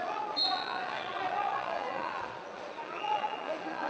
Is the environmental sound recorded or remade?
remade